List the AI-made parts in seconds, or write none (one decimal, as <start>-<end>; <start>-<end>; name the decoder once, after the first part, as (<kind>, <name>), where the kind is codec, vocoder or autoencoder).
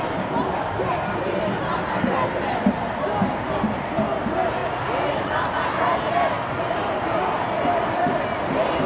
none